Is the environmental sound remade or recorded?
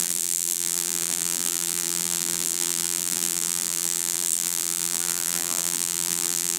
remade